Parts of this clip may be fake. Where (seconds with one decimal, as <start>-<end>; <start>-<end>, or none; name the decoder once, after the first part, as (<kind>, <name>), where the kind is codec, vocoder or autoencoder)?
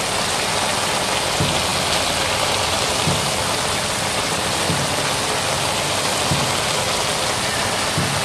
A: none